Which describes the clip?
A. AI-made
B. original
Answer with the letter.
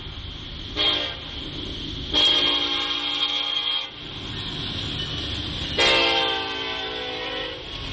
B